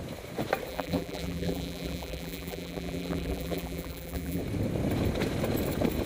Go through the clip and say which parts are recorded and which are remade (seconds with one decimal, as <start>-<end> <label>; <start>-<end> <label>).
0.0-0.7 recorded; 0.7-4.4 remade; 4.4-6.1 recorded